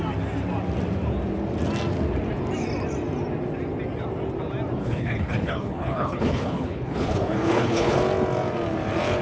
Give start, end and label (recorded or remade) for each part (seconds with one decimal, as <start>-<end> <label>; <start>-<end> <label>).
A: 0.0-4.8 recorded; 4.8-8.0 remade; 8.0-9.2 recorded